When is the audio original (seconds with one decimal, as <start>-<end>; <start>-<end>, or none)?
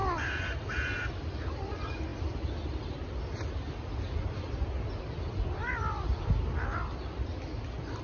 0.0-8.0